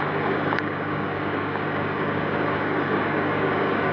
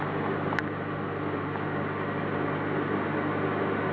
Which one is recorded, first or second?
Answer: second